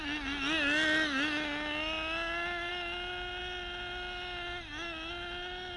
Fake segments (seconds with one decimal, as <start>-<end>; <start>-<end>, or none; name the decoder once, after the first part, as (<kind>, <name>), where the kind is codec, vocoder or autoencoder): none